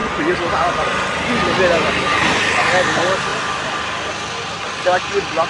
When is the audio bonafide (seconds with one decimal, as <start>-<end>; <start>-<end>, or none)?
0.0-5.5